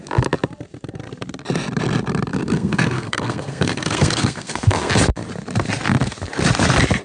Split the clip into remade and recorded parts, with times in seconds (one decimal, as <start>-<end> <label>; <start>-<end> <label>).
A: 0.0-2.3 recorded; 2.3-4.9 remade; 4.9-7.0 recorded